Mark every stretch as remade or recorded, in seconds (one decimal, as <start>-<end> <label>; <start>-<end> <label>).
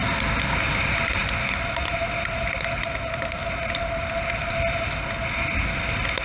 0.0-6.2 recorded